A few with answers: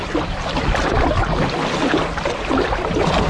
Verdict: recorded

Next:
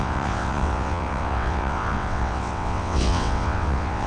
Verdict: remade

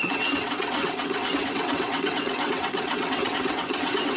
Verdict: remade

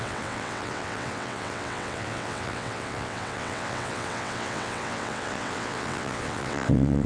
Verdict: remade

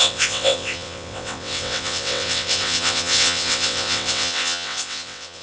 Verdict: remade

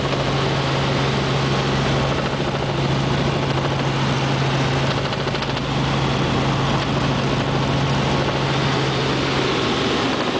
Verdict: recorded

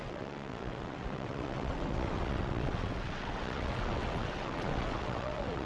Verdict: remade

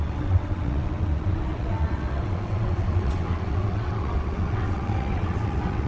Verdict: remade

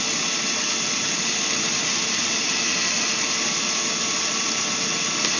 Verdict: recorded